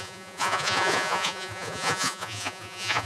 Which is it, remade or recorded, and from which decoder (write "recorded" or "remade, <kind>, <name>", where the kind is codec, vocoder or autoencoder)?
remade, vocoder, Vocos